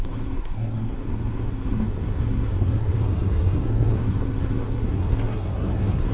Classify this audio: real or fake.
fake